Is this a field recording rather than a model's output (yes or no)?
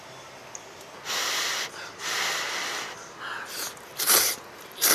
yes